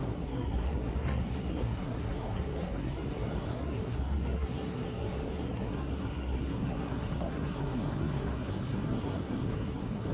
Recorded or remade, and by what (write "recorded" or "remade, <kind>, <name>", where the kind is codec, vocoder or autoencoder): remade, codec, SNAC